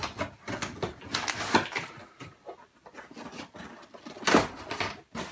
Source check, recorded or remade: recorded